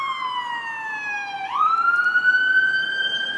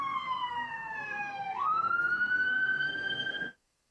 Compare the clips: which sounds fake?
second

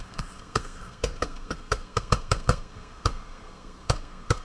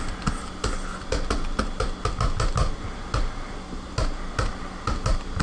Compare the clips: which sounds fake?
first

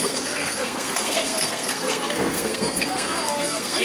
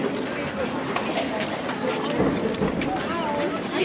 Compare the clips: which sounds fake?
first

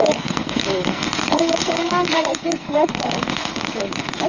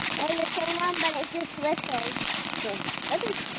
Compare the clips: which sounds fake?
first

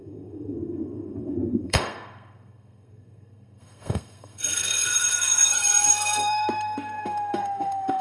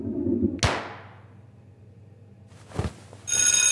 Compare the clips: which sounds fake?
first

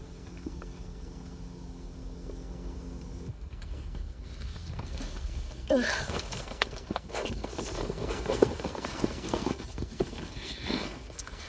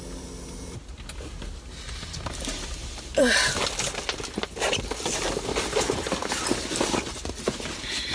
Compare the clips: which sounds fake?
first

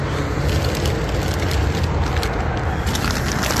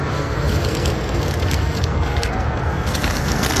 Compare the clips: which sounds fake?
second